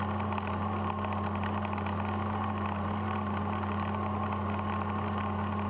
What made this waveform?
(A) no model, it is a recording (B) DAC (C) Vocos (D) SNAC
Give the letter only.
A